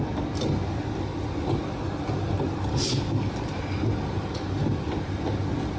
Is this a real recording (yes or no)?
yes